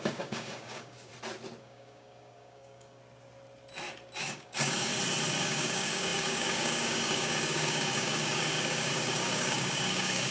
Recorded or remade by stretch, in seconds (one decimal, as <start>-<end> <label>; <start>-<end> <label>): 0.0-1.1 remade; 1.1-1.6 recorded; 1.6-3.0 remade; 3.0-4.2 recorded; 4.2-4.9 remade; 4.9-5.4 recorded; 5.4-10.3 remade